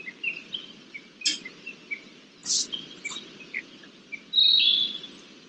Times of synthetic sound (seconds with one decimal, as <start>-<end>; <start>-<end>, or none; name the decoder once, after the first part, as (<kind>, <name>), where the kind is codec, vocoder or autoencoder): none